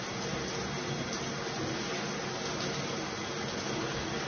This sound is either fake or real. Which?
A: real